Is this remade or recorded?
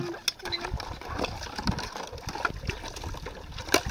recorded